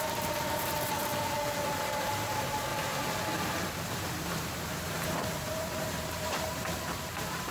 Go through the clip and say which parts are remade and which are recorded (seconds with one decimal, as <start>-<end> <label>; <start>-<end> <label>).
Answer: 0.0-1.1 remade; 1.1-2.2 recorded; 2.2-2.7 remade; 2.7-3.8 recorded; 3.8-7.5 remade